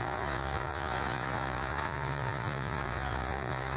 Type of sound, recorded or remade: remade